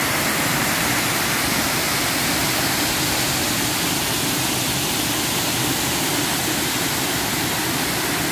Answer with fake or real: real